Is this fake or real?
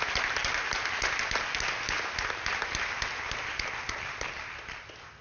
real